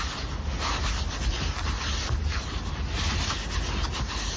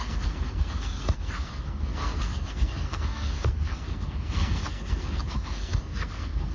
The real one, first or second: first